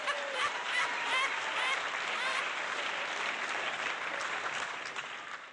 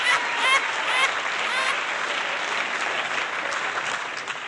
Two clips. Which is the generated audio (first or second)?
first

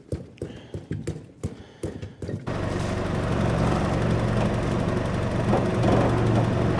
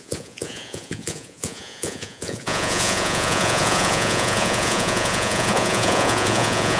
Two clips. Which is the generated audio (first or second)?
second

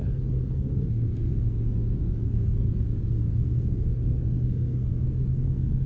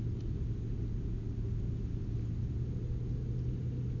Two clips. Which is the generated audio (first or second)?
first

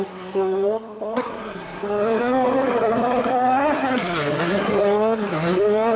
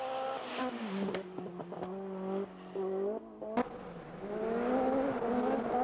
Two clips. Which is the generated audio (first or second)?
first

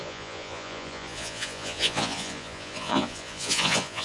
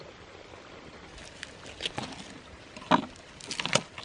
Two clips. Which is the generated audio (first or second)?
first